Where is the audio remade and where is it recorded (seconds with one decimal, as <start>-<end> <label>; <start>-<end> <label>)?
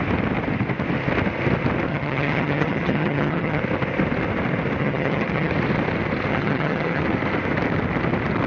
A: 0.0-1.9 recorded; 1.9-3.6 remade; 3.6-4.8 recorded; 4.8-5.5 remade; 5.5-6.3 recorded; 6.3-7.0 remade; 7.0-8.5 recorded